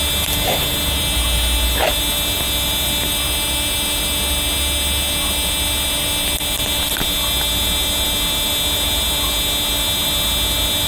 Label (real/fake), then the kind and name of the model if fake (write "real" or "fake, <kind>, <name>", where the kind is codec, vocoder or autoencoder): fake, vocoder, BigVGAN v2